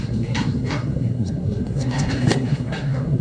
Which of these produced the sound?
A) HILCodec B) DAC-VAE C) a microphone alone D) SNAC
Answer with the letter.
D